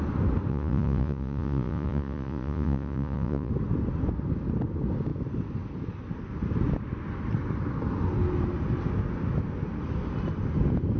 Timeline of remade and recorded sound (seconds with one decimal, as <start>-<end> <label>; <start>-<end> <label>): 0.0-0.5 recorded; 0.5-3.5 remade; 3.5-11.0 recorded